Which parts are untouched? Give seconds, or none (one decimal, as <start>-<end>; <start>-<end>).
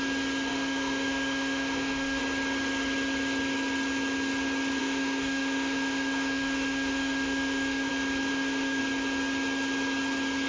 0.0-0.5; 2.2-4.8; 7.9-8.3; 8.8-10.5